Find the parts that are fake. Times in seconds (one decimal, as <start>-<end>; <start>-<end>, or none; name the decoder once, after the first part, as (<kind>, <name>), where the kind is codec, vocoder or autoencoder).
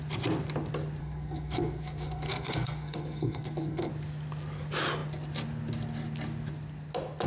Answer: 1.0-3.9 (codec, SNAC)